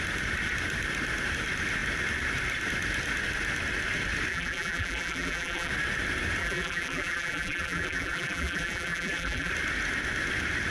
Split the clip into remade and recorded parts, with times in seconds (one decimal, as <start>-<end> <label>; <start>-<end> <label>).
0.0-4.3 recorded; 4.3-5.7 remade; 5.7-6.4 recorded; 6.4-9.5 remade; 9.5-10.7 recorded